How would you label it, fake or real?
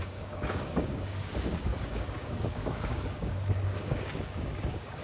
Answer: fake